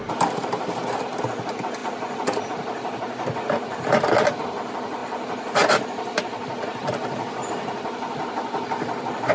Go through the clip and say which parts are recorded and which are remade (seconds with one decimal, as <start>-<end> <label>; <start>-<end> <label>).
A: 0.0-9.3 recorded